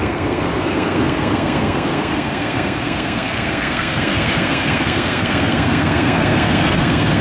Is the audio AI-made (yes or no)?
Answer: yes